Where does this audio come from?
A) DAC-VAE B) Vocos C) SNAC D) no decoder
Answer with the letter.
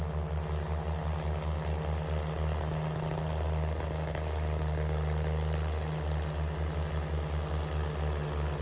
D